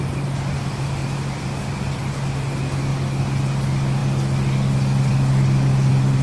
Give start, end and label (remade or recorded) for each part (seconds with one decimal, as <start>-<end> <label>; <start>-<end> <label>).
0.0-1.0 remade; 1.0-1.9 recorded; 1.9-2.9 remade; 2.9-3.4 recorded; 3.4-4.0 remade; 4.0-5.1 recorded; 5.1-6.2 remade